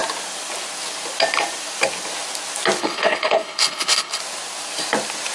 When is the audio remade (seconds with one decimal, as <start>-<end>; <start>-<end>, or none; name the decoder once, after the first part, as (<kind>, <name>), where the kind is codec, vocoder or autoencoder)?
2.8-4.2 (codec, HILCodec)